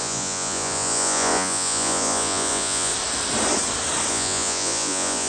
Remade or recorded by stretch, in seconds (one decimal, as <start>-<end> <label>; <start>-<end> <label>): 0.0-2.9 remade; 2.9-4.1 recorded; 4.1-5.3 remade